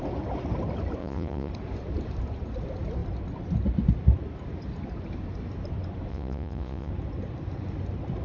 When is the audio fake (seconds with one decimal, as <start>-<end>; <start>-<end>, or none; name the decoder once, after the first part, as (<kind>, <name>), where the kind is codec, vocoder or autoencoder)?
1.0-1.5 (vocoder, Vocos); 6.1-6.9